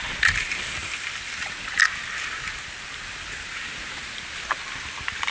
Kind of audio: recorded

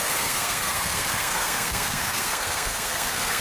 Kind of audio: remade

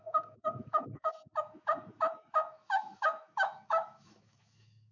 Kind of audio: remade